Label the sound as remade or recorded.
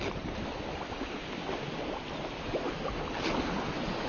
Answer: recorded